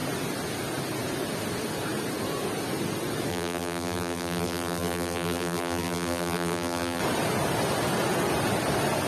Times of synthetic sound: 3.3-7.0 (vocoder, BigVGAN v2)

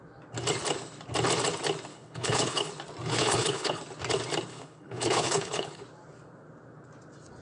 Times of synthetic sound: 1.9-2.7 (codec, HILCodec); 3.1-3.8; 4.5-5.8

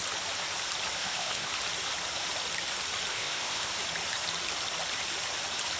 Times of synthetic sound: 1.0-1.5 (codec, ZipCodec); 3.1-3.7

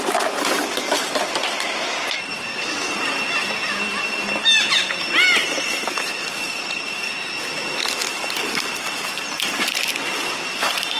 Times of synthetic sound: 6.5-7.3 (vocoder, BigVGAN v2)